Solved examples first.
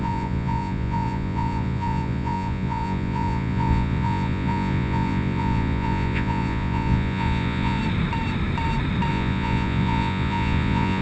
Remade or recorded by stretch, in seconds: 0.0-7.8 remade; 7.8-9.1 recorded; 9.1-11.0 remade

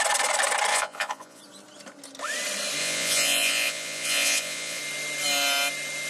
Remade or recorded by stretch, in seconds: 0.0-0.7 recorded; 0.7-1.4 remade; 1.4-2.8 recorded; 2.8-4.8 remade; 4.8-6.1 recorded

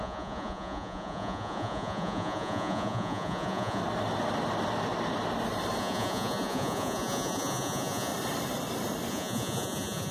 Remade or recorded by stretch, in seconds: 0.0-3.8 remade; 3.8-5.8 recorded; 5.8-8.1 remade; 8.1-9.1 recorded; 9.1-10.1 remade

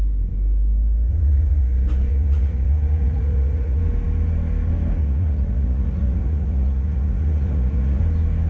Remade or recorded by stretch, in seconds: 0.0-1.1 recorded; 1.1-1.6 remade; 1.6-2.1 recorded; 2.1-3.8 remade; 3.8-5.0 recorded; 5.0-8.0 remade; 8.0-8.5 recorded

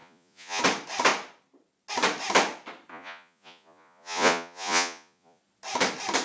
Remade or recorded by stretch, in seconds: 0.0-0.6 remade; 0.6-2.9 recorded; 2.9-5.4 remade; 5.4-6.2 recorded